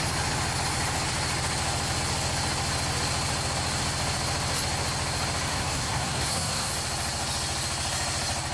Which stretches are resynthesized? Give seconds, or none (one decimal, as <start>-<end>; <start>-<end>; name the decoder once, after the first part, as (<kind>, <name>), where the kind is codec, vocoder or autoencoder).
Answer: 5.5-6.7 (codec, SNAC)